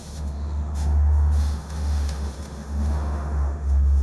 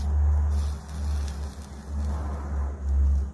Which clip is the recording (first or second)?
second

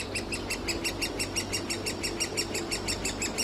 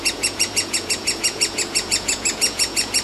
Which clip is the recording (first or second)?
first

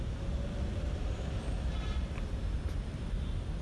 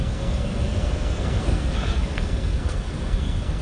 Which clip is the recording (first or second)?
first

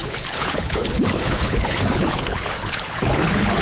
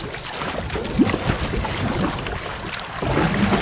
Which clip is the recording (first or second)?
second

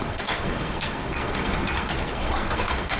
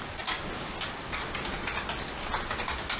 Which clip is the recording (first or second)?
second